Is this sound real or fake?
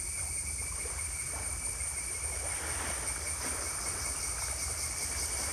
real